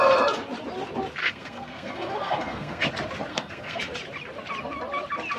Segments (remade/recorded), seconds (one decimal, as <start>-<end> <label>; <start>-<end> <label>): 0.0-1.2 recorded; 1.2-2.9 remade; 2.9-3.3 recorded; 3.3-3.8 remade; 3.8-5.4 recorded